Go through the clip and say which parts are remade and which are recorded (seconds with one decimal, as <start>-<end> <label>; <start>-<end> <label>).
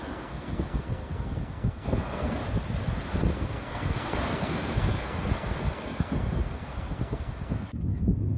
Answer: 0.0-2.4 remade; 2.4-3.0 recorded; 3.0-8.4 remade